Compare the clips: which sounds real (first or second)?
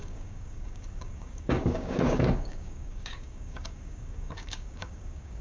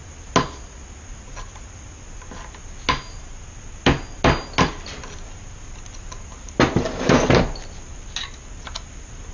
second